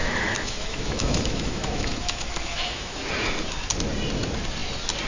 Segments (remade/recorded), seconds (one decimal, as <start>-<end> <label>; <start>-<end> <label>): 0.0-3.1 remade; 3.1-5.1 recorded